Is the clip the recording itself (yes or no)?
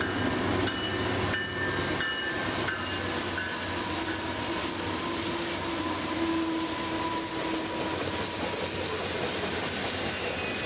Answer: yes